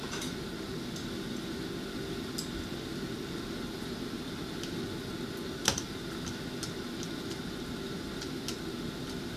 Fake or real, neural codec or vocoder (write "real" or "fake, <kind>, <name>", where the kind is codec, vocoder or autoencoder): real